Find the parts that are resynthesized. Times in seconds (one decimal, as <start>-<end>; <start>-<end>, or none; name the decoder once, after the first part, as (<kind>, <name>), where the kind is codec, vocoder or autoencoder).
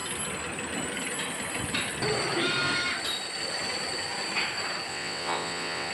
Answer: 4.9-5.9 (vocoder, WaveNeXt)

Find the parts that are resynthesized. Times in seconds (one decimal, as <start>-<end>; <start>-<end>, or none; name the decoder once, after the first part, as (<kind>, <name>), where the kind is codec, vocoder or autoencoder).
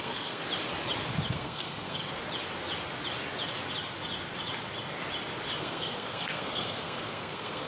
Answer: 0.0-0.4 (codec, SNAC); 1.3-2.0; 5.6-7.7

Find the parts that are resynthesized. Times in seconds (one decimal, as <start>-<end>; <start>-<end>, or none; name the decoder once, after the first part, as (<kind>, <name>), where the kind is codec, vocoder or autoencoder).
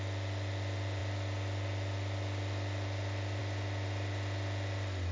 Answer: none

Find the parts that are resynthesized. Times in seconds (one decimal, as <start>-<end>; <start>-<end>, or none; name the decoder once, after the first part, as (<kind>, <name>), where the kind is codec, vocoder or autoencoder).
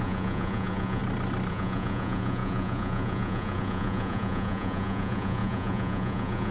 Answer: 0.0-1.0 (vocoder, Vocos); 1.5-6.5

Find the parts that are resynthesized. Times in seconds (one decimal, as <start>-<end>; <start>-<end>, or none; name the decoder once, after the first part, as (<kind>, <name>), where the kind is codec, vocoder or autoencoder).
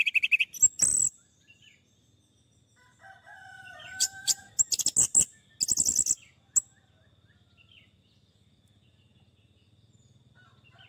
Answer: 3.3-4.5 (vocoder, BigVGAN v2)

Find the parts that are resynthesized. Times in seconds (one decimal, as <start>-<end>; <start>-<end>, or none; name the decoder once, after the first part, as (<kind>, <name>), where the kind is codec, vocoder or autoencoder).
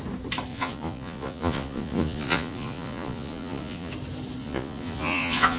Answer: 0.5-3.9 (vocoder, Vocos); 4.4-5.6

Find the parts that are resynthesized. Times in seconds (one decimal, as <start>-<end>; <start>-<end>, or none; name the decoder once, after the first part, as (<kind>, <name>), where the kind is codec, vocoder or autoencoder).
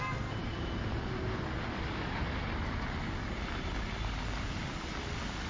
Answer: none